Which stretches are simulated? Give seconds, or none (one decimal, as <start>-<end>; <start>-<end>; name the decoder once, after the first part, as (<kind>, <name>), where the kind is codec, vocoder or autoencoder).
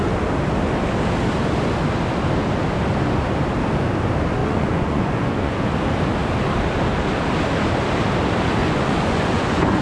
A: 4.4-5.7 (vocoder, Vocos); 8.6-9.8